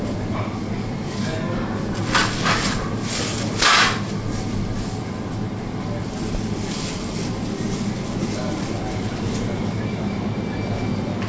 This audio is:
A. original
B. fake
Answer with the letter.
A